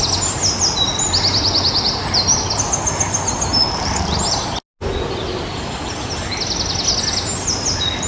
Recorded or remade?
recorded